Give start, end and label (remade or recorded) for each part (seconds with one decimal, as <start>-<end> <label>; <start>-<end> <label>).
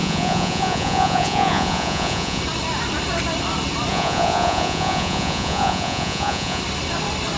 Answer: 0.0-2.4 remade; 2.4-3.9 recorded; 3.9-6.6 remade; 6.6-7.4 recorded